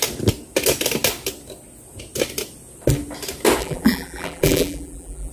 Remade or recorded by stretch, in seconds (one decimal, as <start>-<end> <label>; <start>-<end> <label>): 0.0-3.6 recorded; 3.6-5.3 remade